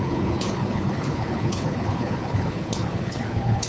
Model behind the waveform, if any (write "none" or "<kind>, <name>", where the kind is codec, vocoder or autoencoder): codec, HILCodec